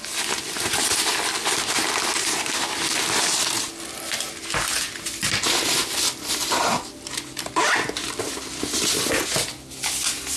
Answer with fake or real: real